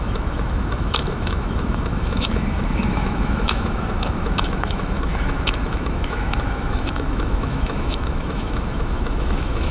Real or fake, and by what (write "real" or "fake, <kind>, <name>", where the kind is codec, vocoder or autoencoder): fake, autoencoder, DAC-VAE